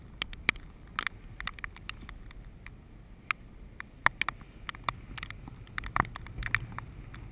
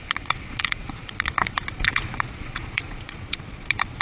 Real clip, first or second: first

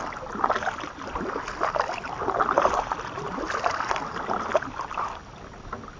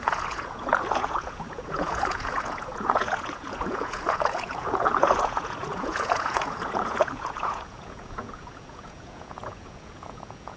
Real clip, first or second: first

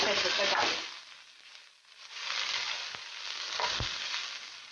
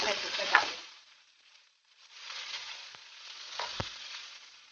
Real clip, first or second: first